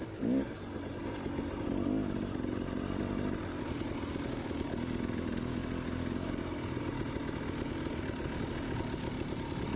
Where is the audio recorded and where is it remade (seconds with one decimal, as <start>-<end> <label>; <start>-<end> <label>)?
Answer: 0.0-9.8 recorded